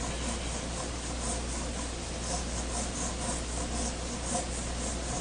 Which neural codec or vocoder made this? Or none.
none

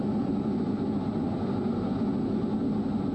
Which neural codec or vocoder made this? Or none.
none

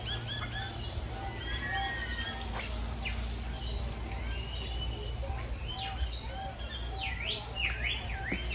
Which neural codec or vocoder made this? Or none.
none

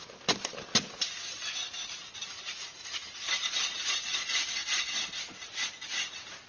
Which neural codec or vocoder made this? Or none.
none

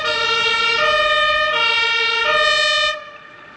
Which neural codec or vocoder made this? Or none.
none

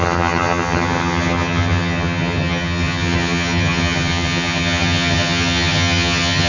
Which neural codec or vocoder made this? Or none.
vocoder, HiFi-GAN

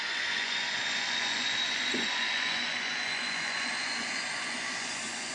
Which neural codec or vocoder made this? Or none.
vocoder, Vocos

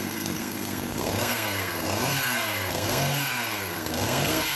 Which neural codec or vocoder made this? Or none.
codec, SNAC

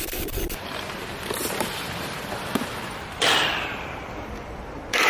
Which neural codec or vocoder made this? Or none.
vocoder, BigVGAN v2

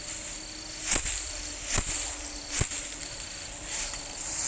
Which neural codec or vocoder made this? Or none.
none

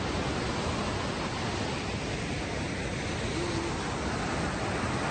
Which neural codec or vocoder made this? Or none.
none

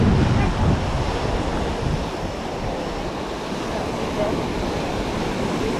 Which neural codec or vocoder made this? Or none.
none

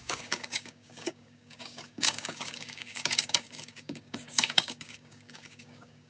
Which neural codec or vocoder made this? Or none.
codec, DAC